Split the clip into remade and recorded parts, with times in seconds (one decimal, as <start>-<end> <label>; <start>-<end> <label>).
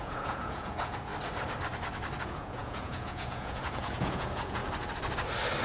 0.0-1.1 remade; 1.1-2.2 recorded; 2.2-4.6 remade; 4.6-5.6 recorded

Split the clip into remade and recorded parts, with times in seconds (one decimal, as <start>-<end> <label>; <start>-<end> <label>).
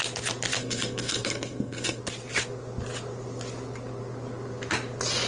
0.0-0.6 recorded; 0.6-2.0 remade; 2.0-5.3 recorded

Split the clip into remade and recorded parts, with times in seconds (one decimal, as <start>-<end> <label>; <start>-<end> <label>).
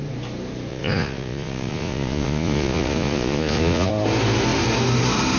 0.0-0.7 recorded; 0.7-3.9 remade; 3.9-5.4 recorded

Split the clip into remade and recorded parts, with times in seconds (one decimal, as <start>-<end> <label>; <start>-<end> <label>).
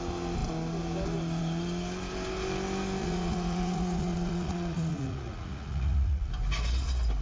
0.0-3.0 recorded; 3.0-6.3 remade; 6.3-7.2 recorded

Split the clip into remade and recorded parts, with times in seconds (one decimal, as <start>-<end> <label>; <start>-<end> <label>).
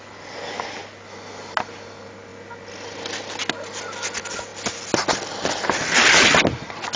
0.0-7.0 recorded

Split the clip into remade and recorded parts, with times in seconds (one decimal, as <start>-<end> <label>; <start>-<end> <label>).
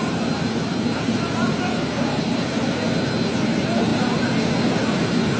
0.0-5.4 recorded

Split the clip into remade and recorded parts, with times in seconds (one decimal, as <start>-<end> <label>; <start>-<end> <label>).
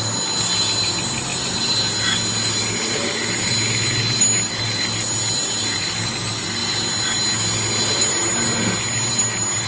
0.0-9.7 recorded